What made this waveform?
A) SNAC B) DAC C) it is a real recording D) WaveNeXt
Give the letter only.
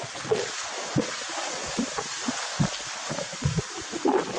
C